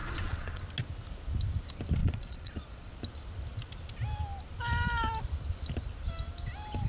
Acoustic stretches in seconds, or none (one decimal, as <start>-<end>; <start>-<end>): 0.6-2.0; 2.9-6.9